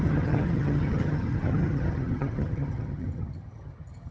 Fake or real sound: fake